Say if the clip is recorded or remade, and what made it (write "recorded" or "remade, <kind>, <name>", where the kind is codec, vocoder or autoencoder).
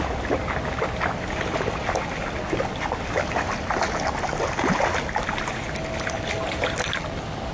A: recorded